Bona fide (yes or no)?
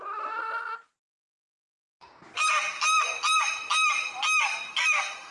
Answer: yes